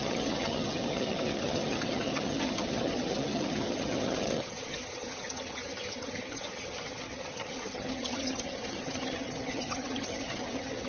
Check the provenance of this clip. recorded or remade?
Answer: remade